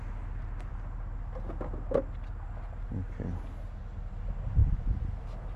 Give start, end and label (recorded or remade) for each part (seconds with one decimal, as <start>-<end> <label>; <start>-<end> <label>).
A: 0.0-4.6 recorded; 4.6-5.6 remade

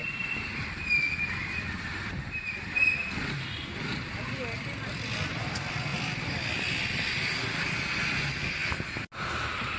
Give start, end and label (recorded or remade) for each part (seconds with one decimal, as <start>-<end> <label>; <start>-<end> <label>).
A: 0.0-3.5 remade; 3.5-3.9 recorded; 3.9-4.7 remade; 4.7-5.9 recorded; 5.9-7.6 remade; 7.6-9.8 recorded

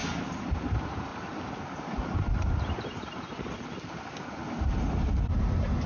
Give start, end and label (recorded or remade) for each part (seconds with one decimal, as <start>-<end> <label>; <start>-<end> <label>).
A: 0.0-5.9 recorded

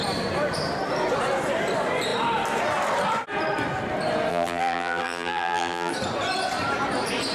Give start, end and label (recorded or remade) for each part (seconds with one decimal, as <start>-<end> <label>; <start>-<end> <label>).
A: 0.0-4.3 recorded; 4.3-5.9 remade; 5.9-7.3 recorded

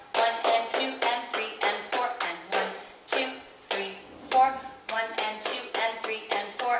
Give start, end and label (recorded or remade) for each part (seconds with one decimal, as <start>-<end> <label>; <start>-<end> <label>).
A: 0.0-5.5 recorded; 5.5-6.8 remade